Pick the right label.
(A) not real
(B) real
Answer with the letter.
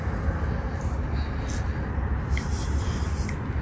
B